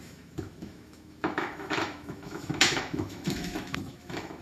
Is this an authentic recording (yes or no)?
no